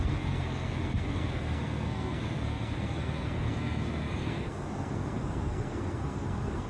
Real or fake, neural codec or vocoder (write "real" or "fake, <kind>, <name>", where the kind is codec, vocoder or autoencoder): fake, codec, SNAC